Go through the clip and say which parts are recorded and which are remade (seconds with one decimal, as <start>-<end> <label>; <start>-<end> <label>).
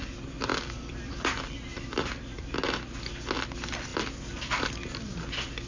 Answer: 0.0-5.7 recorded